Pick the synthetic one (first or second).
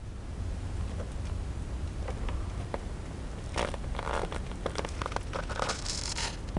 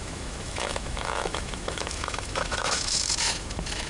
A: second